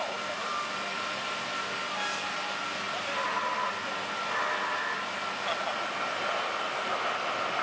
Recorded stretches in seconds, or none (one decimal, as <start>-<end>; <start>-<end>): 0.0-7.6